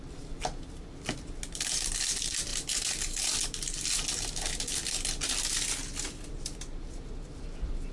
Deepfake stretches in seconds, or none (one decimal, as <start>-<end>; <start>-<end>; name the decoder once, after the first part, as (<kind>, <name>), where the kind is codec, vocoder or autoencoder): none